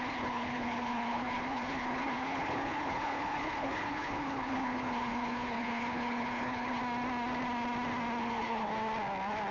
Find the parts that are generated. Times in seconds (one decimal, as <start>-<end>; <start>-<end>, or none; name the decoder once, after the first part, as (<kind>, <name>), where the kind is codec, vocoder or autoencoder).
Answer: 0.0-6.8 (codec, HILCodec); 8.2-8.7